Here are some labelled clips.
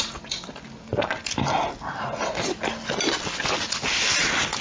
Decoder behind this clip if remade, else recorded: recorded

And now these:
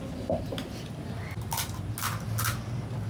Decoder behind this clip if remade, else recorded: recorded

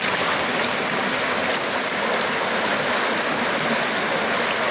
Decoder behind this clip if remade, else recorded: recorded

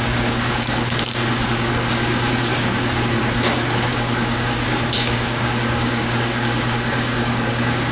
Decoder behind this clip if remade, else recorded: remade, codec, DAC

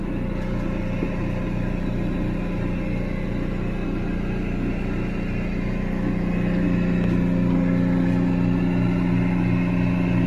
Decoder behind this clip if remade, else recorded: recorded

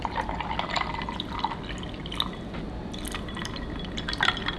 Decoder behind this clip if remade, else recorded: recorded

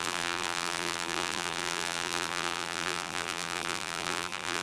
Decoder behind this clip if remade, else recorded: remade, vocoder, BigVGAN v2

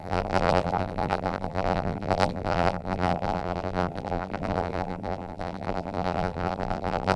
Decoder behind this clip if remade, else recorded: remade, vocoder, BigVGAN v2